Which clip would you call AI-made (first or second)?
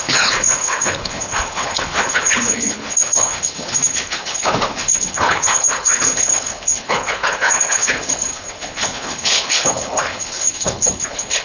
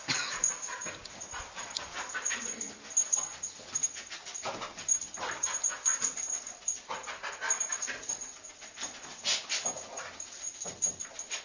first